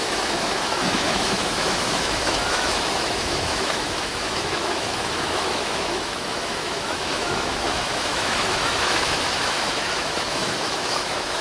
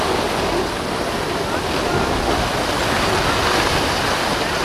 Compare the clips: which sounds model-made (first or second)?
first